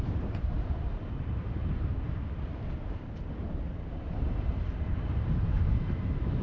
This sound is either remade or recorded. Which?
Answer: remade